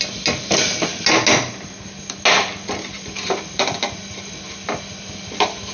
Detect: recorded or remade recorded